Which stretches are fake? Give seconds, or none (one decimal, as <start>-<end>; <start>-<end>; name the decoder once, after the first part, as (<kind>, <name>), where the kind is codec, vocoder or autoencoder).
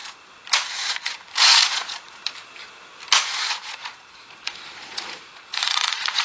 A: 0.7-2.2 (vocoder, Vocos); 3.3-6.2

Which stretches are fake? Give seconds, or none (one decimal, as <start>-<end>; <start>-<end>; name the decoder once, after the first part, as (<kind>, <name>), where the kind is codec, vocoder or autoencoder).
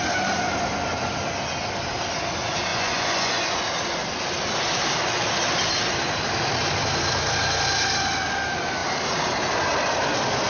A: 2.7-3.6 (vocoder, Vocos)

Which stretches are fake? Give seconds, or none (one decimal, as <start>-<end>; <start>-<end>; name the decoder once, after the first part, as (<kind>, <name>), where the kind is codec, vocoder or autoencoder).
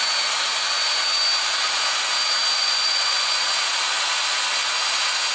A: 2.5-3.4 (vocoder, Vocos)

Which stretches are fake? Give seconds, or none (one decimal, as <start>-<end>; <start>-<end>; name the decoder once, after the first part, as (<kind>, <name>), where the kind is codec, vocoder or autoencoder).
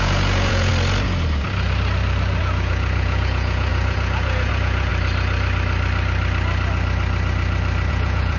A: 0.0-0.7 (vocoder, Vocos); 2.4-4.9; 7.9-8.4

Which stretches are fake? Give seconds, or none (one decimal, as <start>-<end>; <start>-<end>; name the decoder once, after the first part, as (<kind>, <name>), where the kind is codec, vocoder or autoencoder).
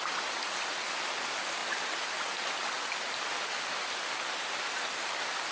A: none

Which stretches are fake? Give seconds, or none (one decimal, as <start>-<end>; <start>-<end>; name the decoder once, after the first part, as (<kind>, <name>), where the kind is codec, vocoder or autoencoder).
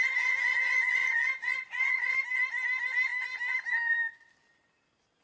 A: 1.0-2.1 (vocoder, Vocos)